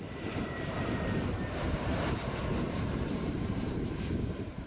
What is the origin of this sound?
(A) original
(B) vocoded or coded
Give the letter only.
B